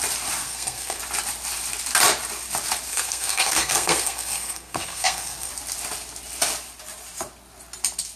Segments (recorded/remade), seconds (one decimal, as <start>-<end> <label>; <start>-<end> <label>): 0.0-0.4 recorded; 0.4-1.0 remade; 1.0-2.9 recorded; 2.9-5.5 remade; 5.5-8.2 recorded